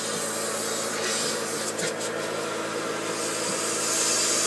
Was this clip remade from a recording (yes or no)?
no